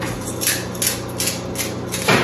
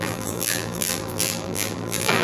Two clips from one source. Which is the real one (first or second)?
first